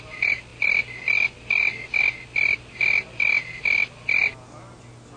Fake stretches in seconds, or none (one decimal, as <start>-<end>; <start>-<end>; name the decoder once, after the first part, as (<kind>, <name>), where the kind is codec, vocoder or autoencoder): none